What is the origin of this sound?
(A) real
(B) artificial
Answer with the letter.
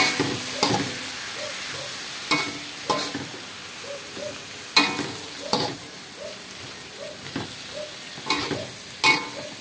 A